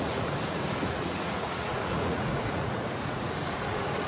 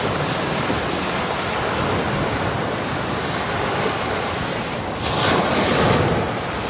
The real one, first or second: second